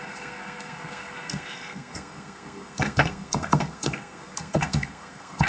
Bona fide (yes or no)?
no